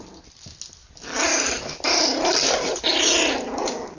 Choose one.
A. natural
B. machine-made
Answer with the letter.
A